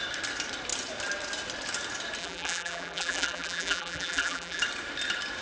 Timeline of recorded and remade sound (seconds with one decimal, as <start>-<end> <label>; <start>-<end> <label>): 0.0-2.2 recorded; 2.2-4.6 remade; 4.6-5.4 recorded